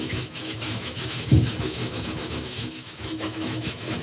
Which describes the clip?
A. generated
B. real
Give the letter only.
A